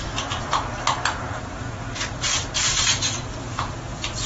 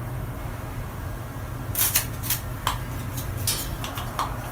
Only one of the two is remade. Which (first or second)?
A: first